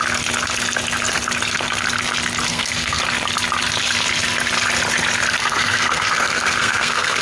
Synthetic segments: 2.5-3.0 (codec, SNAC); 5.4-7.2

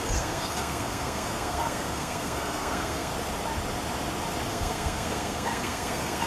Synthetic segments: 0.0-3.1 (codec, SNAC); 4.5-6.3

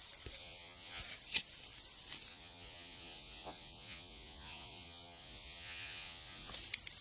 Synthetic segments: 0.4-1.0 (vocoder, Vocos); 2.3-6.5

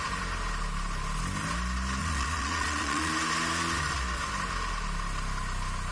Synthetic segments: 2.0-3.1 (vocoder, Vocos)

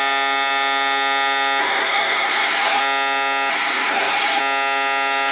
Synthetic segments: 1.6-2.8 (codec, SNAC); 3.5-4.4